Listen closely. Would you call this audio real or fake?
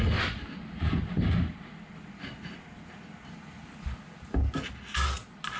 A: real